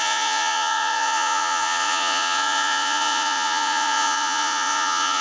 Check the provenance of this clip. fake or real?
fake